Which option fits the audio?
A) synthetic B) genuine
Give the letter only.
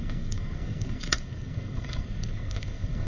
A